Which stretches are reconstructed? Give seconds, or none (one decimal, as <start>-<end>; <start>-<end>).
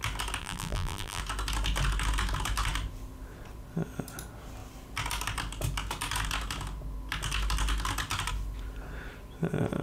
0.4-1.2